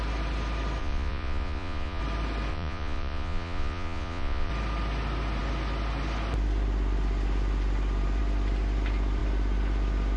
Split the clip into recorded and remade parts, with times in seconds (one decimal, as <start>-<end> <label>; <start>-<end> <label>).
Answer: 0.0-0.8 recorded; 0.8-2.0 remade; 2.0-2.5 recorded; 2.5-4.5 remade; 4.5-10.2 recorded